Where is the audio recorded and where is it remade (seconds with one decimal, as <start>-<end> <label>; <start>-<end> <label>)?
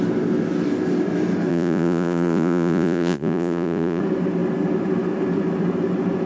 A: 0.0-1.5 recorded; 1.5-4.0 remade; 4.0-6.3 recorded